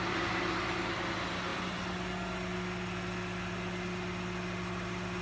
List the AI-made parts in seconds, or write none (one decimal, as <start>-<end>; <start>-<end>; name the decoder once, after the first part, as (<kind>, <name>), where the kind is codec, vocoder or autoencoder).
none